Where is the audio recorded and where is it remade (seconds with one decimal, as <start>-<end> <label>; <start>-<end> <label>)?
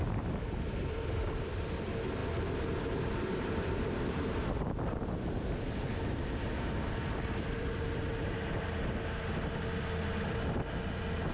0.0-11.3 recorded